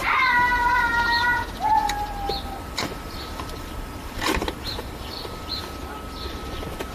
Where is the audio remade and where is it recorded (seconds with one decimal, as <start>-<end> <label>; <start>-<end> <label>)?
0.0-1.8 recorded; 1.8-5.6 remade; 5.6-6.9 recorded